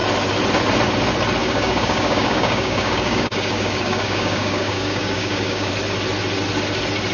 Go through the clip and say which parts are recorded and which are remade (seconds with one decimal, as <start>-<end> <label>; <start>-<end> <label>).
0.0-1.4 recorded; 1.4-5.7 remade; 5.7-7.1 recorded